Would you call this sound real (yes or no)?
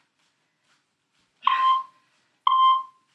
yes